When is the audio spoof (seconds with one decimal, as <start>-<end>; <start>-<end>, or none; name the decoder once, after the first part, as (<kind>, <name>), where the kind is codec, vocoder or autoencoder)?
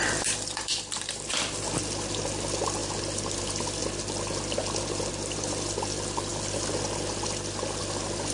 0.0-2.8 (vocoder, BigVGAN v2); 3.4-3.8; 5.1-6.3; 7.8-8.3